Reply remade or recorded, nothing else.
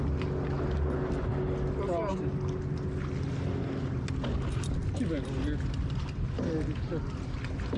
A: recorded